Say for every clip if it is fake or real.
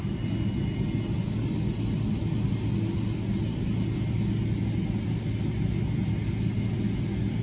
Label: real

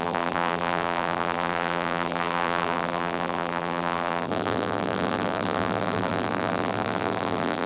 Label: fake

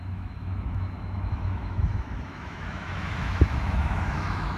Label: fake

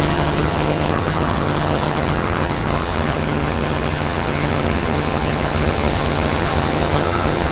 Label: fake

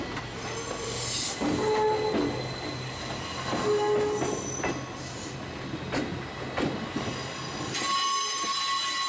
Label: real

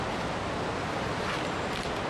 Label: real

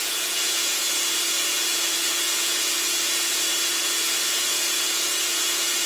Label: fake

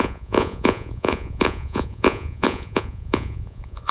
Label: fake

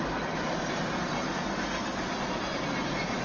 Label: real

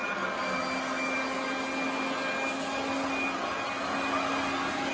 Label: real